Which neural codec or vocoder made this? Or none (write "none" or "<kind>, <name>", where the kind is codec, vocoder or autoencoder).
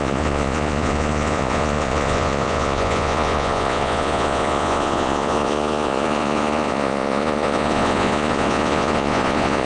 vocoder, Vocos